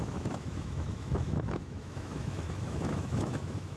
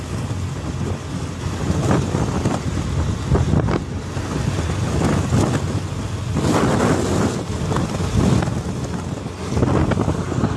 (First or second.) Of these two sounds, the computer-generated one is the first